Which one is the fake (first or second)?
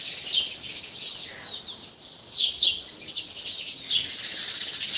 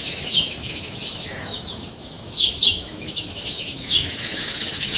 second